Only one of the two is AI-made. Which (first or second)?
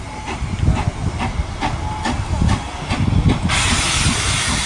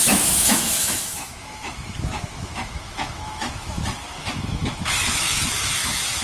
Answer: second